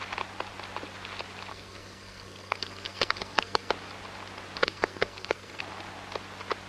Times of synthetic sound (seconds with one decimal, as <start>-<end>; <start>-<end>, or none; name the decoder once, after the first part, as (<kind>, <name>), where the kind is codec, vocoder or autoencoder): 1.5-3.7 (codec, SNAC); 4.6-5.6